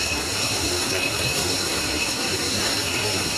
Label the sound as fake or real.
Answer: fake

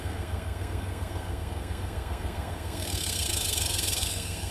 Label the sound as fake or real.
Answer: fake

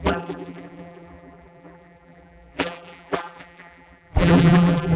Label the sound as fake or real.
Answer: fake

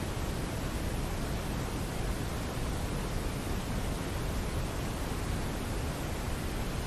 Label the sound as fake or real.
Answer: real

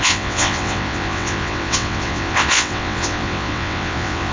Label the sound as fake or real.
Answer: fake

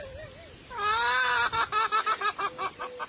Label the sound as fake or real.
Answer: real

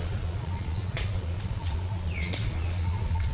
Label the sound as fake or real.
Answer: fake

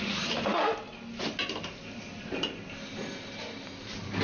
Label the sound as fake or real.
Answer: real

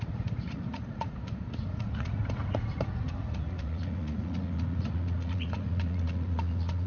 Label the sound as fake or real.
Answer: fake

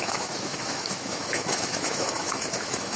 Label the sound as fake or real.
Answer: fake